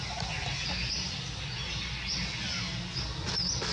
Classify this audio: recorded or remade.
recorded